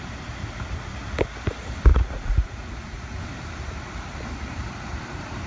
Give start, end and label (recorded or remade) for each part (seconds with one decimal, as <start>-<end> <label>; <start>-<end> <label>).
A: 0.0-1.9 recorded; 1.9-3.2 remade; 3.2-5.5 recorded